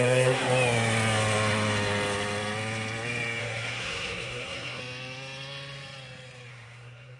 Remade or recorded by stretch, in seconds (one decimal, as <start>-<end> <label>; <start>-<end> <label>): 0.0-0.4 remade; 0.4-3.4 recorded; 3.4-4.8 remade; 4.8-6.5 recorded; 6.5-7.2 remade